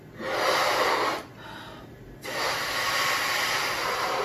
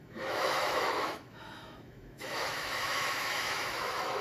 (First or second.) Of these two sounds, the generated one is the second